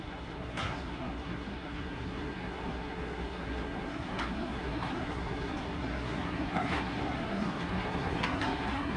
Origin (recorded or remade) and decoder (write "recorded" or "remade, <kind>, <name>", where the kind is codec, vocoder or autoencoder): remade, codec, SNAC